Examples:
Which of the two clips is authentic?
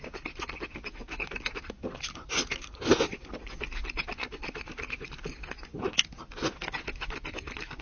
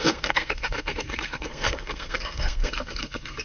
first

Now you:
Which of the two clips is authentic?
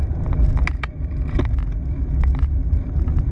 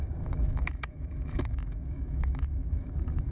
first